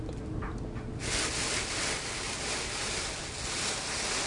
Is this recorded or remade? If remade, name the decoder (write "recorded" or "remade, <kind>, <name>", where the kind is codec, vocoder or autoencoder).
recorded